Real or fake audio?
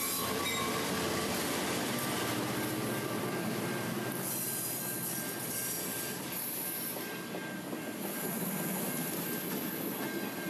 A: fake